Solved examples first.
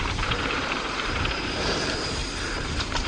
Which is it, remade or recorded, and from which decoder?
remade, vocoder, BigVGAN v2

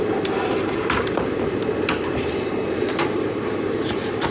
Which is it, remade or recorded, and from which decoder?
remade, vocoder, BigVGAN v2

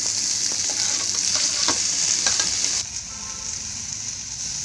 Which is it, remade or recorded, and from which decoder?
recorded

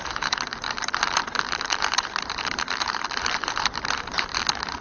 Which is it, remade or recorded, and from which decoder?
remade, vocoder, BigVGAN v2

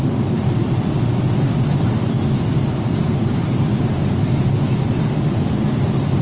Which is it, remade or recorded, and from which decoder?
recorded